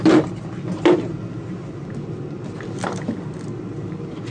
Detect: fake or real real